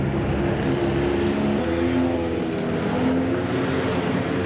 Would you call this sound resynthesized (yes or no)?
no